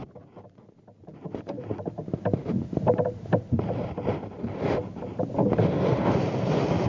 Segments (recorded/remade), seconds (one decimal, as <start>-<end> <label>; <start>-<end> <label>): 0.0-6.9 recorded